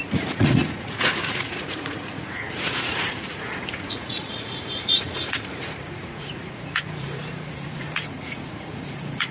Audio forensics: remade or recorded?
remade